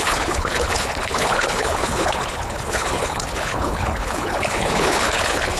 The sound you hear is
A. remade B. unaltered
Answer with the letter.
A